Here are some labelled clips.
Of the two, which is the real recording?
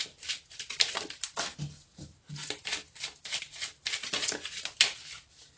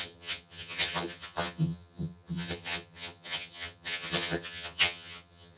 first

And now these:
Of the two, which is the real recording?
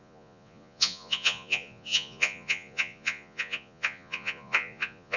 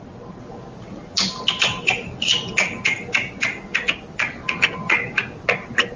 second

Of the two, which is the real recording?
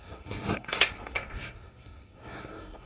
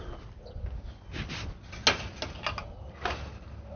second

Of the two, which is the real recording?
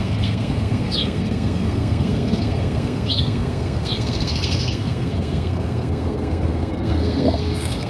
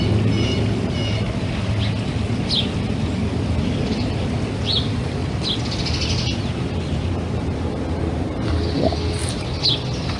second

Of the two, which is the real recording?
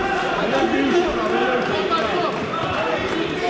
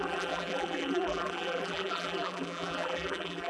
first